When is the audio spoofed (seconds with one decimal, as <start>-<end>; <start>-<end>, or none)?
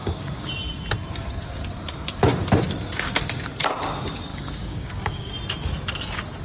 0.0-0.5; 4.3-5.3